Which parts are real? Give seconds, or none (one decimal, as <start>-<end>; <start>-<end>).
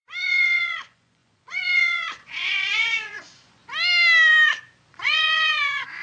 3.6-4.9